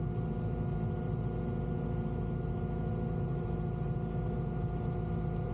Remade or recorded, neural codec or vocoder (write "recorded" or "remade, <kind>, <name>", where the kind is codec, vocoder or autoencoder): recorded